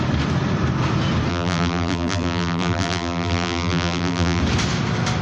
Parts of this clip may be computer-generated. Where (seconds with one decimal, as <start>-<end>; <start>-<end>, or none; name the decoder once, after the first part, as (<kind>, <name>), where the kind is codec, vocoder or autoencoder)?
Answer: 1.3-4.4 (vocoder, BigVGAN v2)